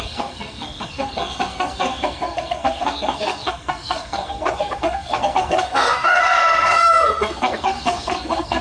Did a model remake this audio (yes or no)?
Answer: yes